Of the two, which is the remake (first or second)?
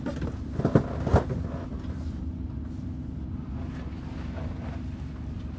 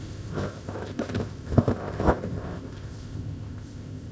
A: second